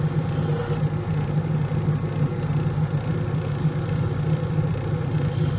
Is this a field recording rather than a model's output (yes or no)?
yes